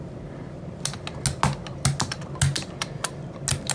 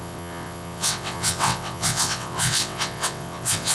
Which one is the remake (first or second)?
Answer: second